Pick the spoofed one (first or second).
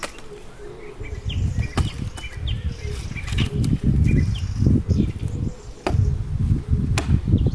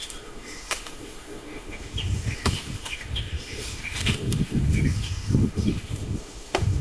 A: second